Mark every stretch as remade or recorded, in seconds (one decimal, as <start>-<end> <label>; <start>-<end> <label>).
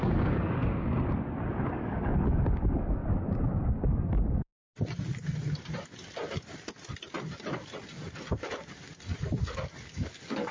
0.0-0.7 remade; 0.7-1.7 recorded; 1.7-3.0 remade; 3.0-3.7 recorded; 3.7-4.5 remade; 4.5-9.4 recorded; 9.4-10.5 remade